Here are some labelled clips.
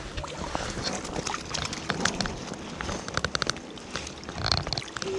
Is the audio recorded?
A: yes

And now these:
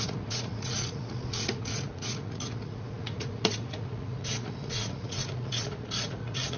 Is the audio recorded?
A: no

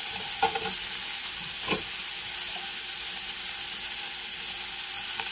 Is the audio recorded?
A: yes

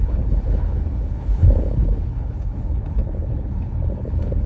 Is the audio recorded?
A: no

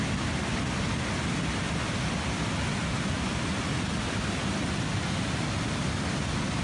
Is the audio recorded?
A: yes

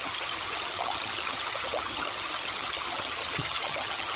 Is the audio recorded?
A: no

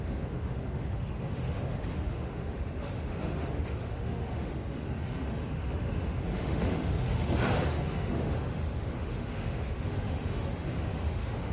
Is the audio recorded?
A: no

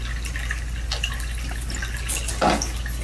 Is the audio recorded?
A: yes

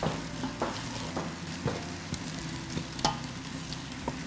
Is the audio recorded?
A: yes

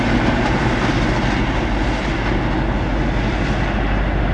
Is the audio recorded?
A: yes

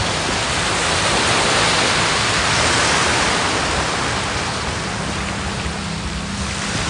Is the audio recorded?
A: yes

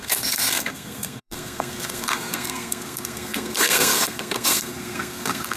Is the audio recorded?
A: no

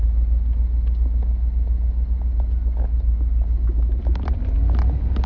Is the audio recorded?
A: yes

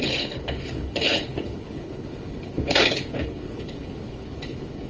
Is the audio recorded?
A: no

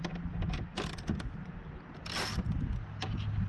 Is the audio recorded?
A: yes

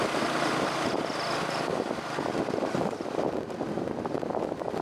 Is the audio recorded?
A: yes